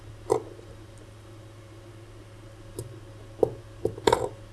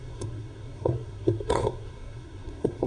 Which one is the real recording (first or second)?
first